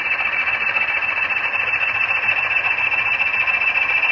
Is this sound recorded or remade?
recorded